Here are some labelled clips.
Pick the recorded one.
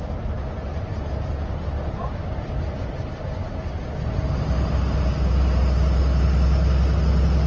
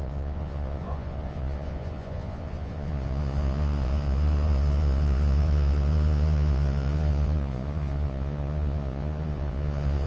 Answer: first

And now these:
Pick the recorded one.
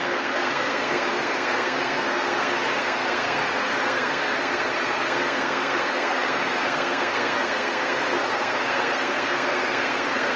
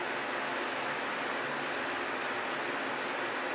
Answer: second